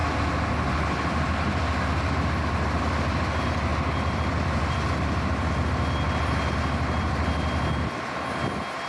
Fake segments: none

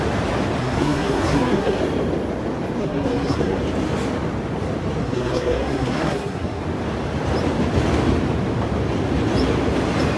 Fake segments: 0.6-1.8 (codec, SNAC); 2.8-3.6; 5.0-6.6

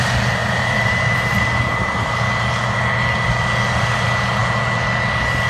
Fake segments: 0.4-1.8 (vocoder, BigVGAN v2)

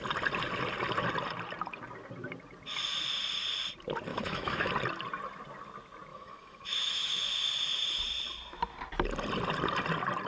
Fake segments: 4.1-4.7 (autoencoder, DAC-VAE); 6.1-7.2